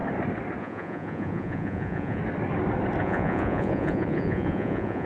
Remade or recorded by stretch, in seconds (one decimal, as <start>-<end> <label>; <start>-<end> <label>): 0.0-0.6 recorded; 0.6-2.2 remade; 2.2-3.0 recorded; 3.0-5.1 remade